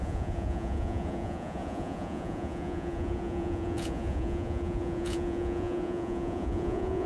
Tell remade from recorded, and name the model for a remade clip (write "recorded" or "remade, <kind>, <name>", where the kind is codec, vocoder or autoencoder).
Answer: remade, vocoder, Vocos